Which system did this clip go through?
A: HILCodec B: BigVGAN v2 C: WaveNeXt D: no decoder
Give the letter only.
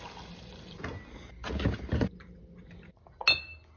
D